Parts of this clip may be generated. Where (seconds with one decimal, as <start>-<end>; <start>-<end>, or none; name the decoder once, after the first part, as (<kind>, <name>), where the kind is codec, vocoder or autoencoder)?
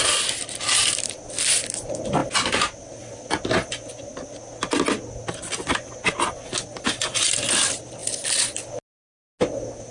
none